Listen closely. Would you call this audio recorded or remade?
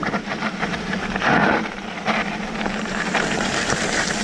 remade